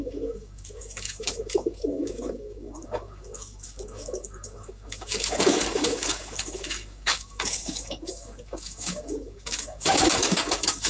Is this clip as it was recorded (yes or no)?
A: no